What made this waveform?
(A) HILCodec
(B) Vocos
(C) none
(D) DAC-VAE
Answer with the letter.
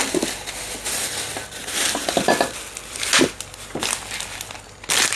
C